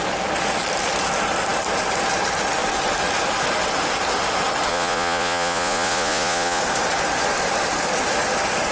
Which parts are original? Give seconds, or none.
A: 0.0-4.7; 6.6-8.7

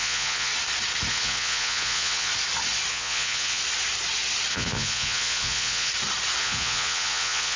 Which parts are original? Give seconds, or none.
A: 0.5-1.1; 2.3-2.9; 3.6-4.5; 5.9-6.4

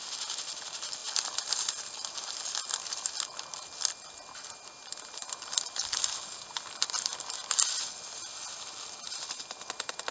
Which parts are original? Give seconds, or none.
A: 0.0-10.1

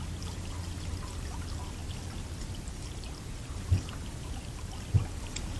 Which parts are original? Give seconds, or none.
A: 0.0-5.6